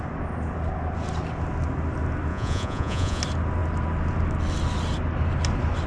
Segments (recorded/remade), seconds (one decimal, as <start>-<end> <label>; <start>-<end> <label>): 0.0-2.3 recorded; 2.3-3.2 remade; 3.2-5.9 recorded